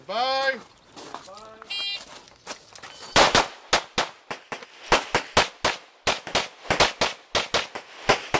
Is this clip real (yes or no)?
yes